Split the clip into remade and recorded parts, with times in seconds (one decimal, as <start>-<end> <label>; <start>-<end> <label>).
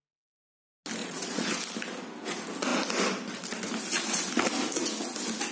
0.0-1.0 recorded; 1.0-1.6 remade; 1.6-5.5 recorded